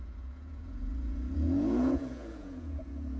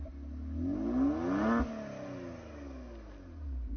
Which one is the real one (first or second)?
second